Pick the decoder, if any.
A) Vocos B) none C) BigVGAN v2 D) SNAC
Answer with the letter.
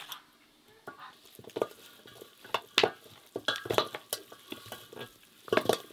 B